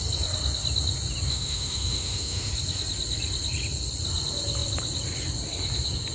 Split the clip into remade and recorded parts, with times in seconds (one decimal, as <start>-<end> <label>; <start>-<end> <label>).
0.0-1.3 recorded; 1.3-2.5 remade; 2.5-6.1 recorded